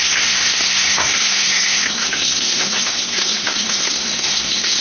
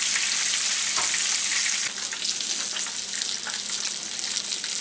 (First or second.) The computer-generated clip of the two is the first